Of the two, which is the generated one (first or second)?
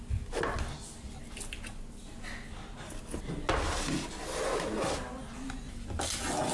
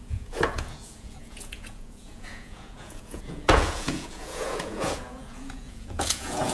second